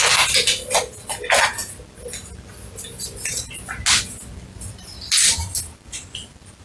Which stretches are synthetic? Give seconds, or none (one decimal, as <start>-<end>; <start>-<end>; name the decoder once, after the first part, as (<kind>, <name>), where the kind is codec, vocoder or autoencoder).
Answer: none